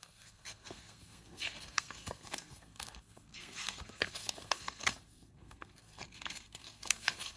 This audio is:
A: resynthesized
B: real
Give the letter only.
A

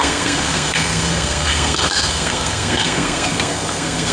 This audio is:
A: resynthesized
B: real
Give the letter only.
A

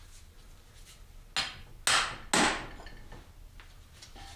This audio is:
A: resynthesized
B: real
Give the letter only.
B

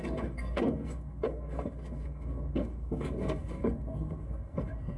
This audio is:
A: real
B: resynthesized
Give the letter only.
B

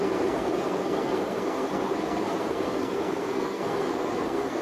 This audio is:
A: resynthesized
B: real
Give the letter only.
A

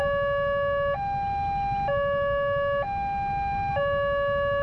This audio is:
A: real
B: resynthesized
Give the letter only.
A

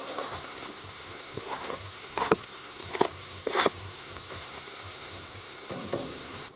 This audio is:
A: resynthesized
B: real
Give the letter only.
A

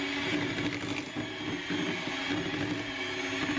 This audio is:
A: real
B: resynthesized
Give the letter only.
A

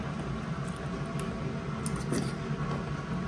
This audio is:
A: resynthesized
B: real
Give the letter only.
B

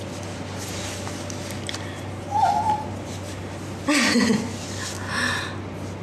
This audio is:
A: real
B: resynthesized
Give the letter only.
A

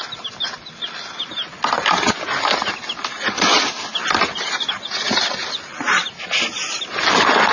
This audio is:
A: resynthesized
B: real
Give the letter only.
B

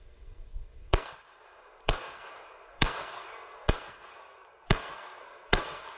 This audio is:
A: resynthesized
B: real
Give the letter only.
A